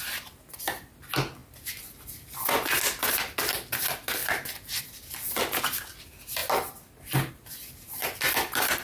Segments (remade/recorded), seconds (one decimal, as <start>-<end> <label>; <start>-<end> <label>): 0.0-8.8 recorded